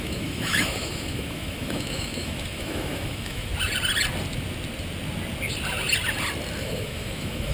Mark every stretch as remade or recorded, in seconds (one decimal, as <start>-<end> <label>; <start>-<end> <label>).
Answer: 0.0-3.5 remade; 3.5-6.6 recorded; 6.6-7.5 remade